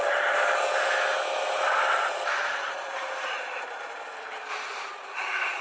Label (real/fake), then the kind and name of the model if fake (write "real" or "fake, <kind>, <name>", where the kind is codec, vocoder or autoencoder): real